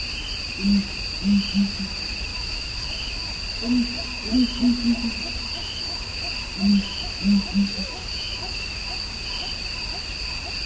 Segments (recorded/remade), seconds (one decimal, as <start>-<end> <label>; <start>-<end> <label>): 0.0-2.3 recorded; 2.3-3.3 remade; 3.3-5.6 recorded; 5.6-6.3 remade; 6.3-6.7 recorded; 6.7-8.9 remade; 8.9-10.7 recorded